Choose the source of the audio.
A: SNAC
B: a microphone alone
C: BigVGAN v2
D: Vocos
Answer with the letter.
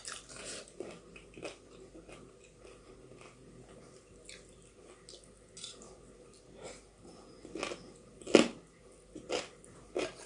B